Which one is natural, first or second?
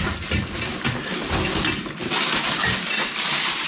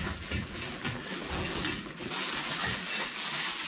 first